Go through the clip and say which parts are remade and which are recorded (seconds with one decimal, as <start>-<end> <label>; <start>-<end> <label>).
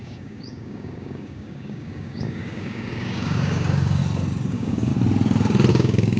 0.0-4.0 remade; 4.0-4.5 recorded; 4.5-4.9 remade; 4.9-5.7 recorded; 5.7-6.2 remade